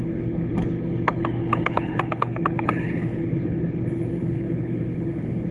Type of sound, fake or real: fake